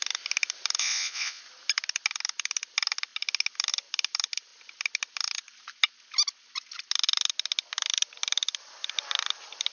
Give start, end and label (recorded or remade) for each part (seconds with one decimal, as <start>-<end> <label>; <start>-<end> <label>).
0.0-0.8 recorded; 0.8-1.4 remade; 1.4-9.7 recorded